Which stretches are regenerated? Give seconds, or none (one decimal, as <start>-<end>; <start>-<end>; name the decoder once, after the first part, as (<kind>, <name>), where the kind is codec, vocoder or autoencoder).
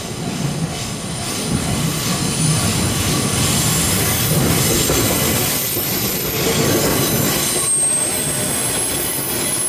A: none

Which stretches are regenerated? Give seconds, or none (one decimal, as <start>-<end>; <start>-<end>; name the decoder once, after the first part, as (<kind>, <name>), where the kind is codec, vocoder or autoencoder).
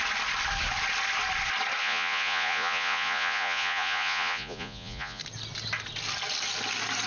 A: 1.8-5.2 (vocoder, Vocos)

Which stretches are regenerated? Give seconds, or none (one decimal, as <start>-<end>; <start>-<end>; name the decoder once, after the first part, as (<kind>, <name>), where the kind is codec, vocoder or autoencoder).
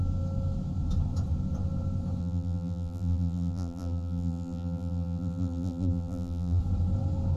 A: 2.2-6.6 (vocoder, BigVGAN v2)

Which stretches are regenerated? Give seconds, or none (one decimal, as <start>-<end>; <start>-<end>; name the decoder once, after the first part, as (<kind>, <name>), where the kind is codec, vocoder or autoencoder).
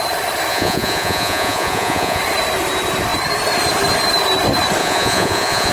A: 0.5-2.2 (vocoder, Vocos); 4.8-5.7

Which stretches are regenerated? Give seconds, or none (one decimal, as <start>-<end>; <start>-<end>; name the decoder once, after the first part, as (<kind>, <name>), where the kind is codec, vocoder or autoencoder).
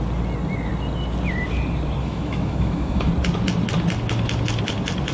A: 2.0-3.1 (autoencoder, DAC-VAE)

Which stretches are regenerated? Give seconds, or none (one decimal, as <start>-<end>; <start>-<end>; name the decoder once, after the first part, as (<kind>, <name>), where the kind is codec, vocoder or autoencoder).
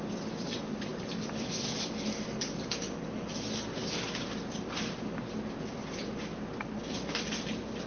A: none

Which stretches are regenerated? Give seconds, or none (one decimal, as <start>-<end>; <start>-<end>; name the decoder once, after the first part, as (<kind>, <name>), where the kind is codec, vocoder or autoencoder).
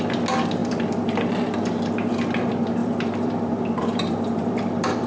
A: 0.6-2.1 (vocoder, BigVGAN v2); 2.8-5.1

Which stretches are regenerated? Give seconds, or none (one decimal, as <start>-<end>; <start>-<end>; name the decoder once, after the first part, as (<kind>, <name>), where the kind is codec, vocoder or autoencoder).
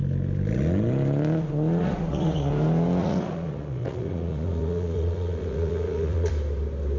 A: 1.8-2.5 (vocoder, Vocos); 3.0-6.3